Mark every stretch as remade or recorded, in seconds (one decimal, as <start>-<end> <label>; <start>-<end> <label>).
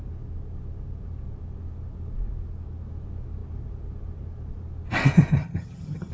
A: 0.0-5.4 recorded; 5.4-6.1 remade